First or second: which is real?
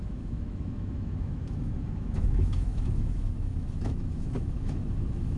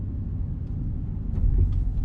second